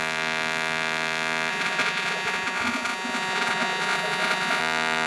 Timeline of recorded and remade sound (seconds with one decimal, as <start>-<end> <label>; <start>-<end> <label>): 0.0-1.5 recorded; 1.5-4.6 remade; 4.6-5.1 recorded

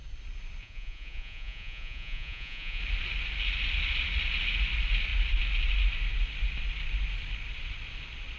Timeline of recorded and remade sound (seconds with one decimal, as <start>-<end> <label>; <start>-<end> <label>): 0.0-0.6 recorded; 0.6-2.8 remade; 2.8-8.4 recorded

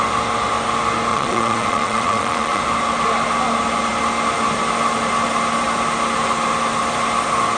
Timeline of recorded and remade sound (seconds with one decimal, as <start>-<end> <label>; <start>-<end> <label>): 0.0-1.1 recorded; 1.1-2.6 remade; 2.6-7.6 recorded

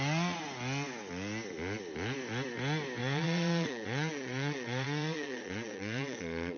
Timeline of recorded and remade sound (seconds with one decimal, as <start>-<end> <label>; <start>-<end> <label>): 0.0-3.0 recorded; 3.0-6.6 remade

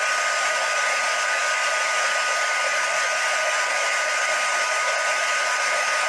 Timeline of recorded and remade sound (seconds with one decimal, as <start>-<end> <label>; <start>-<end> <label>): 0.0-6.1 recorded

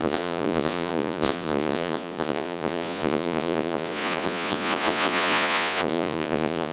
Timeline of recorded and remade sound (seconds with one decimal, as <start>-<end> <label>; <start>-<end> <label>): 0.0-6.7 remade

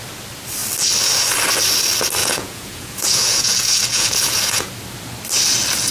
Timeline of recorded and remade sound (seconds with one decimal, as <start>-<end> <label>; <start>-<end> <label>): 0.0-2.2 recorded; 2.2-4.7 remade; 4.7-5.9 recorded

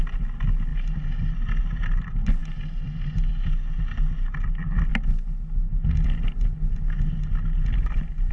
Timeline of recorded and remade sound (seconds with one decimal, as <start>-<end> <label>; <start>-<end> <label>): 0.0-8.3 recorded